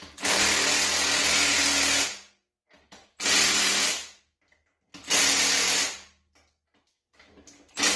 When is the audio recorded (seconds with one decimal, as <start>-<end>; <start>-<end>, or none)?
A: 0.0-8.0